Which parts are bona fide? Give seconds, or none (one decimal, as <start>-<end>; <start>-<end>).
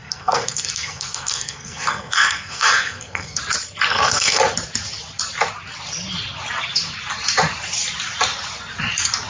3.4-3.9; 4.4-9.3